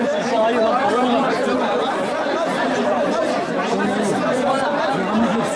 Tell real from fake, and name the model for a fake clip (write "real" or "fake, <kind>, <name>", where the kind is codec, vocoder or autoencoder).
real